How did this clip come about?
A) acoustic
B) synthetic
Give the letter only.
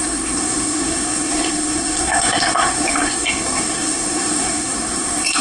B